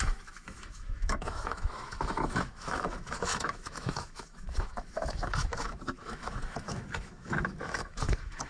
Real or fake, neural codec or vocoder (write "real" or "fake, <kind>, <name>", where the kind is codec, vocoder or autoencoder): fake, autoencoder, DAC-VAE